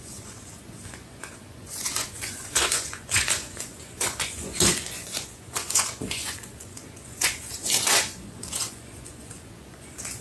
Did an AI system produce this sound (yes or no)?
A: yes